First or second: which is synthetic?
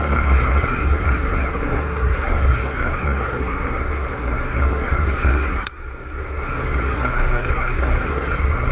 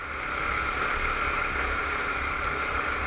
first